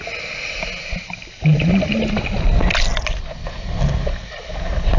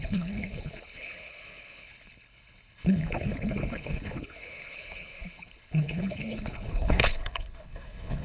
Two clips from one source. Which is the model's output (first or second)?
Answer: second